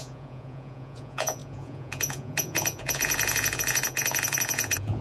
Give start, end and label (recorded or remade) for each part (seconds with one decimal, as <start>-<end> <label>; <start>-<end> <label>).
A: 0.0-5.0 remade

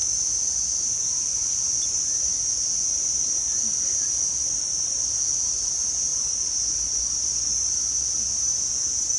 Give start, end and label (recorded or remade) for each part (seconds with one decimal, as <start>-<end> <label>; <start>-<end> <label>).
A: 0.0-9.2 recorded

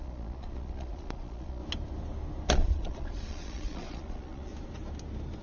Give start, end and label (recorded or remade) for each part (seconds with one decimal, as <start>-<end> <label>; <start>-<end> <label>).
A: 0.0-1.6 remade; 1.6-2.5 recorded; 2.5-4.5 remade; 4.5-5.4 recorded

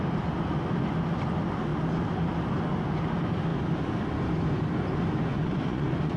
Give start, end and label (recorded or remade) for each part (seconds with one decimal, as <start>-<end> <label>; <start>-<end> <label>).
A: 0.0-5.3 recorded; 5.3-6.2 remade

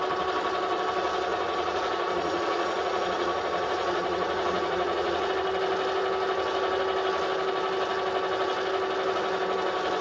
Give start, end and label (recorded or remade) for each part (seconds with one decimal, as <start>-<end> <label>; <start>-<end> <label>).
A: 0.0-1.3 recorded; 1.3-5.3 remade; 5.3-10.0 recorded